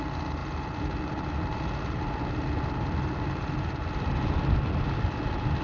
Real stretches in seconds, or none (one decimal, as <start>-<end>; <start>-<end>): 0.0-5.6